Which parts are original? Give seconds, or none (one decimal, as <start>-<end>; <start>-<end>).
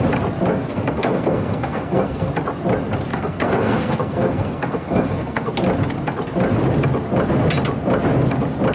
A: 0.0-0.5; 2.3-3.1; 5.5-8.7